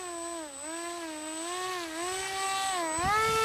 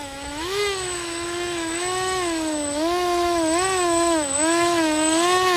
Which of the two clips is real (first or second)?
first